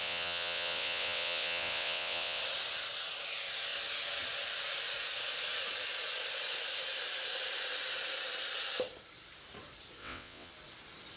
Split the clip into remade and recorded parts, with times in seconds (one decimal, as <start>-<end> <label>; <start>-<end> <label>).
0.0-2.4 remade; 2.4-10.0 recorded; 10.0-10.5 remade; 10.5-11.2 recorded